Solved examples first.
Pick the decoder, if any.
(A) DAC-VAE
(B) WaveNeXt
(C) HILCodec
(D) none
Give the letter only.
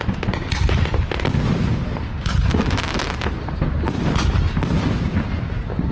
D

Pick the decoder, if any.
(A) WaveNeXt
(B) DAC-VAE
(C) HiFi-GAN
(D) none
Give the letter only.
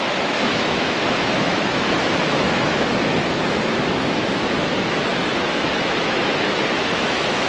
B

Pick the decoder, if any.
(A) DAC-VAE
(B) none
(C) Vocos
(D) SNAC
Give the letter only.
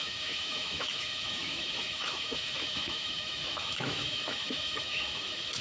A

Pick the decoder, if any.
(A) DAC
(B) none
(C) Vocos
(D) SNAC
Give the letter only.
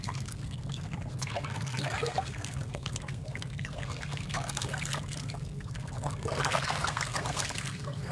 D